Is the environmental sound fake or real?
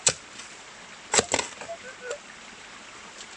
real